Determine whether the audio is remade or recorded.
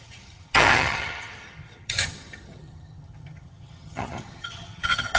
remade